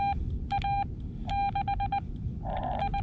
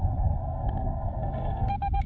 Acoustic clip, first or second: first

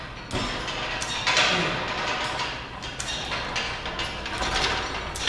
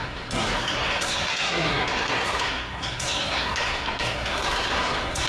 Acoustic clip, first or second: first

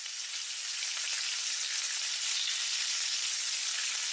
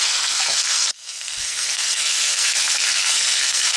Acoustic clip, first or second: first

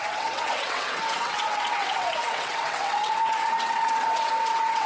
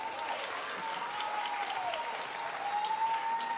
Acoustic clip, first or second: second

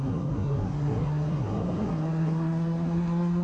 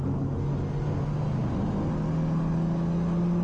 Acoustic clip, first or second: second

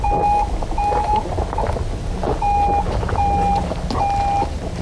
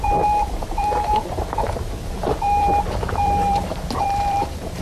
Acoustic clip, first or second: first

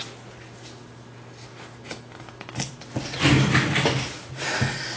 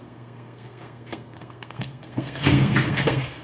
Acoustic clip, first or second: first